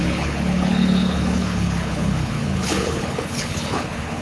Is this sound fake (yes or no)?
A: yes